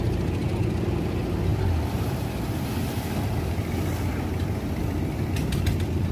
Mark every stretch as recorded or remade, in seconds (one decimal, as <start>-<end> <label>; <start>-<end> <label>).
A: 0.0-6.1 recorded